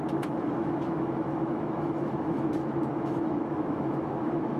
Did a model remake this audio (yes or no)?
yes